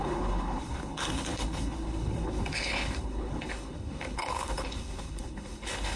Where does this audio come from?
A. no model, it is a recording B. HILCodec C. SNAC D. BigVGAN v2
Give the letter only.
B